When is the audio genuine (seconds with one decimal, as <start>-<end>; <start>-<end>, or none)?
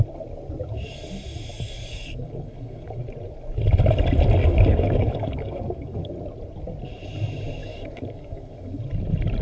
0.0-1.5; 3.0-4.4; 6.1-7.6; 8.8-9.4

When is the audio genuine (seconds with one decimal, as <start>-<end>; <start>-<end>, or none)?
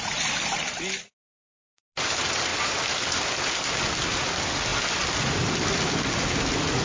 0.0-6.8